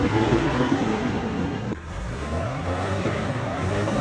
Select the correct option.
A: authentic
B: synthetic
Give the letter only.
B